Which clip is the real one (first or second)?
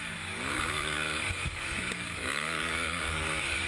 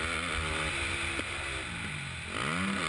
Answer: second